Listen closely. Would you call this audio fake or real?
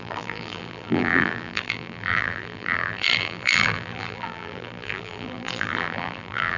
fake